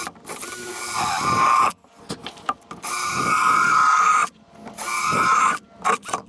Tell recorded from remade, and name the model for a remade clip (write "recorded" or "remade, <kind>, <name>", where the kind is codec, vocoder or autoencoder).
recorded